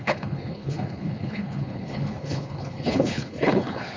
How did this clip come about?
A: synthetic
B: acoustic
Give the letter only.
A